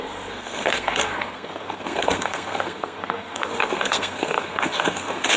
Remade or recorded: remade